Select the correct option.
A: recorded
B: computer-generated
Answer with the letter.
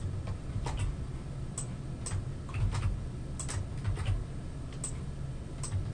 A